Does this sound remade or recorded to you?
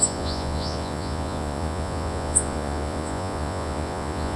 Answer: remade